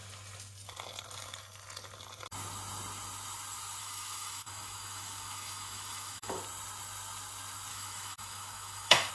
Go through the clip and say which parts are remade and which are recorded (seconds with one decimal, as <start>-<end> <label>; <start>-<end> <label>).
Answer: 0.0-3.8 recorded; 3.8-6.4 remade; 6.4-7.7 recorded; 7.7-9.1 remade